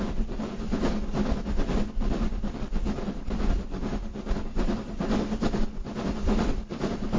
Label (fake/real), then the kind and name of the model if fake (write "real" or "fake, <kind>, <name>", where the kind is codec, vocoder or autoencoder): real